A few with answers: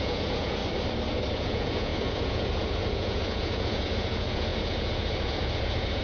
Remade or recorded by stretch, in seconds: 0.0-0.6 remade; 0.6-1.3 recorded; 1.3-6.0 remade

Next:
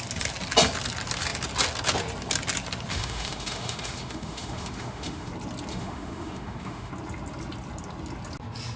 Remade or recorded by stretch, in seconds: 0.0-2.9 recorded; 2.9-5.3 remade; 5.3-5.7 recorded; 5.7-6.9 remade; 6.9-8.8 recorded